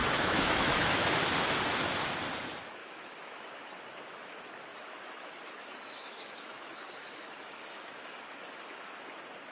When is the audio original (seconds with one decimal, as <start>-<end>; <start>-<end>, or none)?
1.1-2.8; 3.7-4.7; 9.0-9.5